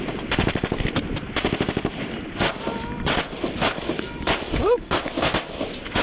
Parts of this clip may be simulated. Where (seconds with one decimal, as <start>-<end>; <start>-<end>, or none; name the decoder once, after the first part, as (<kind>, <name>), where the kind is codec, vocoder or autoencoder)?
3.7-5.0 (codec, DAC)